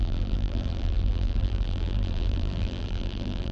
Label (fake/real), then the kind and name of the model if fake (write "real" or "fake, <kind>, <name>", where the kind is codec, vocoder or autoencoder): fake, vocoder, BigVGAN v2